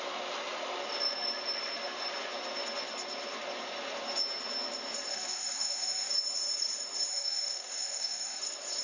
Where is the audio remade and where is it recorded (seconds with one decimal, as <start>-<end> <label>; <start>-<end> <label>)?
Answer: 0.0-5.1 recorded; 5.1-6.1 remade; 6.1-7.1 recorded; 7.1-8.4 remade; 8.4-8.8 recorded